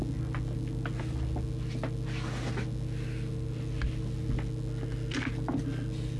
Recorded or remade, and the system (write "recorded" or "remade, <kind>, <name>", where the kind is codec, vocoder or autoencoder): recorded